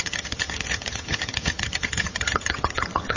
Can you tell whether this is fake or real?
fake